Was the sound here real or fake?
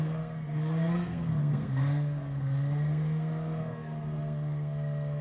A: fake